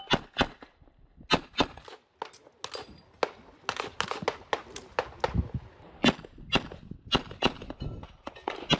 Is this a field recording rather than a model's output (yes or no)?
yes